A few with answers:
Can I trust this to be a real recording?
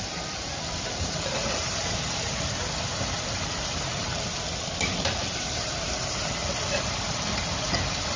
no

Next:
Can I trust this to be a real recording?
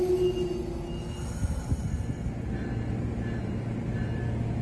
yes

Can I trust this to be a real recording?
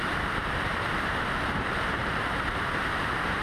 no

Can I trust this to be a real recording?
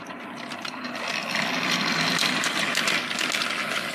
yes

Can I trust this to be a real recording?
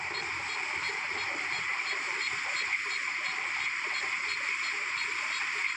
no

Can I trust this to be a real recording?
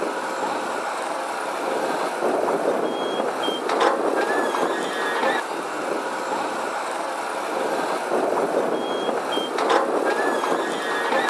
no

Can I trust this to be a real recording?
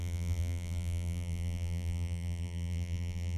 no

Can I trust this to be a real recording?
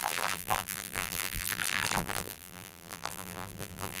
no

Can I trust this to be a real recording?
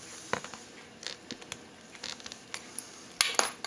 yes